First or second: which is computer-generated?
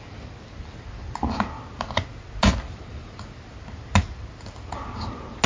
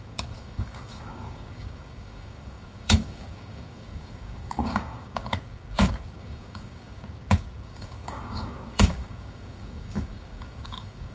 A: second